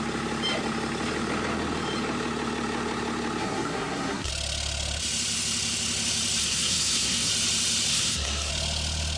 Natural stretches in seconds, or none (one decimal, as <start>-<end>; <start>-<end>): 0.0-3.4; 4.3-6.4; 7.3-7.9; 8.5-9.2